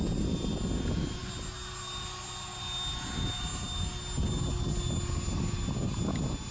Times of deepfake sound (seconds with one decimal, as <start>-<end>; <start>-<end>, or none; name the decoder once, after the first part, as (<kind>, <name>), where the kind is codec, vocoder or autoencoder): none